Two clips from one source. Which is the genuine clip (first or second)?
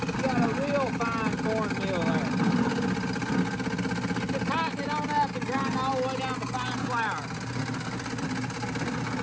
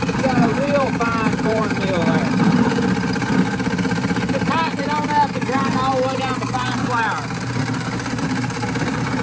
first